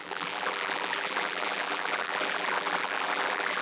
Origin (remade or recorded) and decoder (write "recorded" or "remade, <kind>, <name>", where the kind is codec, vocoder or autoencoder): remade, vocoder, BigVGAN v2